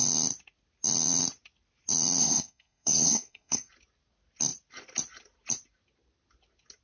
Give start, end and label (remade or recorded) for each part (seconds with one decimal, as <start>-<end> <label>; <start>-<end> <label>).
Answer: 0.0-2.2 recorded; 2.2-3.7 remade; 3.7-6.8 recorded